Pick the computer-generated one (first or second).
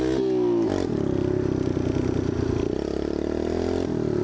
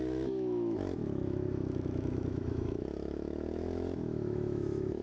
second